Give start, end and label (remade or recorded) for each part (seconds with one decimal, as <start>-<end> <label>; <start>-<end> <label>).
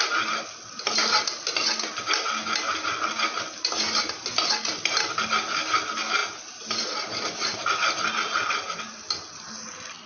0.0-10.1 recorded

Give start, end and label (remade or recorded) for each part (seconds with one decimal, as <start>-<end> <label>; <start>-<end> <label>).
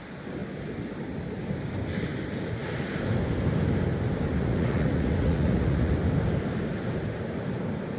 0.0-4.4 recorded; 4.4-5.9 remade; 5.9-8.0 recorded